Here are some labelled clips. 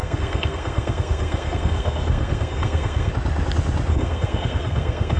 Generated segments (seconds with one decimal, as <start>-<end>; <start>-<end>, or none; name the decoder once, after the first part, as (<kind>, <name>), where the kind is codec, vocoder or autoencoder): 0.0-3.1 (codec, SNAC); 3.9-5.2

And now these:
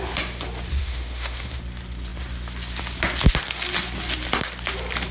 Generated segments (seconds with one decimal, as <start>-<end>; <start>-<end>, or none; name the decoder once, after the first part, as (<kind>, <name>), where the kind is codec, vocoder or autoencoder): 0.8-1.6 (autoencoder, DAC-VAE)

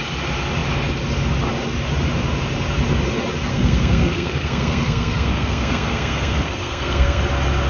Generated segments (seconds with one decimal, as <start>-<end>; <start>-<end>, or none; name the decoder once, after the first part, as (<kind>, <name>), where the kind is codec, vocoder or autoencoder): 3.5-7.2 (codec, SNAC)

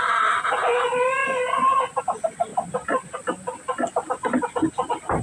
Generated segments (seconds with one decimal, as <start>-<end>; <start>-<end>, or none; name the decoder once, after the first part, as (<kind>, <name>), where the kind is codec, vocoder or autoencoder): none